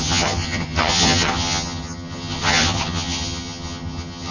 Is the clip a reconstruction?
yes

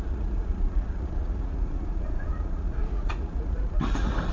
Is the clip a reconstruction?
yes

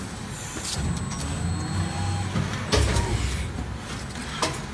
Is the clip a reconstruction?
no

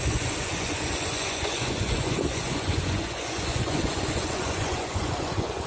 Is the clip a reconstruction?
yes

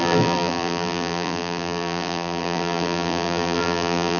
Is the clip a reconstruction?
yes